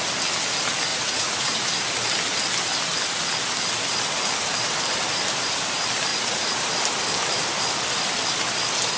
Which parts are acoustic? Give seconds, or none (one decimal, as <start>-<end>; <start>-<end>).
0.0-0.9; 1.7-6.1; 6.6-9.0